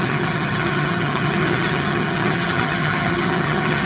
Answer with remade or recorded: remade